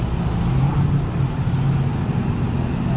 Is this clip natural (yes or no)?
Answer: yes